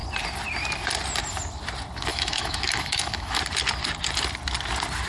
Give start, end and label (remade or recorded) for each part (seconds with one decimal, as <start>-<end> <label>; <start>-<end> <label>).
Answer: 0.0-2.1 recorded; 2.1-3.4 remade; 3.4-5.1 recorded